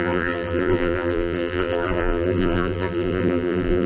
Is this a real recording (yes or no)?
no